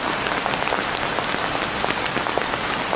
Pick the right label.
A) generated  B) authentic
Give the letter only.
B